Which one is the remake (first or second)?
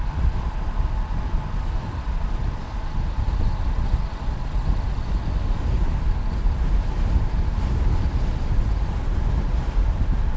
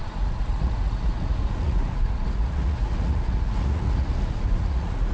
second